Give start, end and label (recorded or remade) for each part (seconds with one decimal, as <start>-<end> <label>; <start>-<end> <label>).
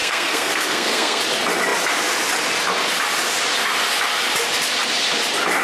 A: 0.0-1.2 remade; 1.2-5.6 recorded